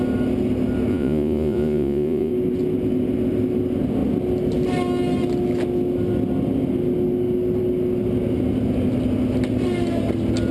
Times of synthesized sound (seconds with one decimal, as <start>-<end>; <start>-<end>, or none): 0.9-2.3